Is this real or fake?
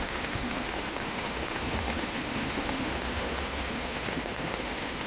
fake